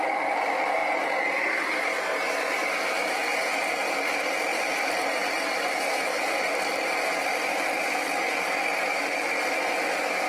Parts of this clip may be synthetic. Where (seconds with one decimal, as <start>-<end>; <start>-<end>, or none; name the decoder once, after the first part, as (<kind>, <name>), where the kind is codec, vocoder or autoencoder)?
none